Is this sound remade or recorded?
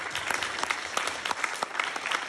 recorded